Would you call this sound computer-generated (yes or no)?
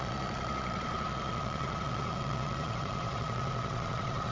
yes